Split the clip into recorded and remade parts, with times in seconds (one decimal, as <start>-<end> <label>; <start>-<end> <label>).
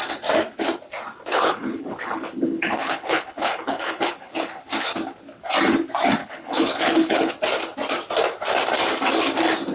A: 0.0-1.3 recorded; 1.3-4.6 remade; 4.6-6.2 recorded; 6.2-7.3 remade; 7.3-9.7 recorded